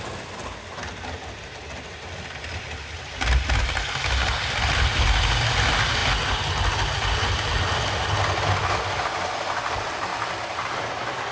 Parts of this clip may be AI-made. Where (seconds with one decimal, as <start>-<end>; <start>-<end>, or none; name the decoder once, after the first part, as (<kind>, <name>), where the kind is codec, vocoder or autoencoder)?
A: none